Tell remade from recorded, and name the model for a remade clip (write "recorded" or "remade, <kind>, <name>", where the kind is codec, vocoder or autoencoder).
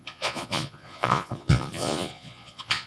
remade, vocoder, Vocos